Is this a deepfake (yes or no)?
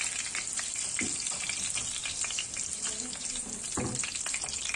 no